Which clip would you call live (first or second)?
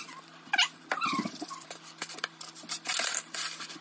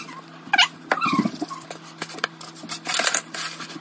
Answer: second